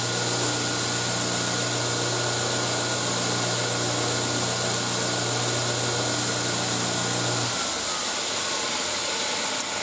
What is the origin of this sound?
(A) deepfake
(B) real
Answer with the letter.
B